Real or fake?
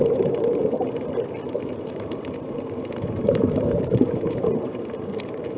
fake